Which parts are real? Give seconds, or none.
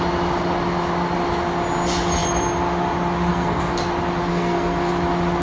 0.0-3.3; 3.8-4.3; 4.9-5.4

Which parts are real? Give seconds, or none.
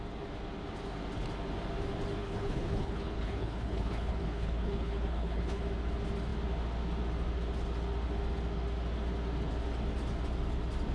0.0-2.2; 5.6-10.9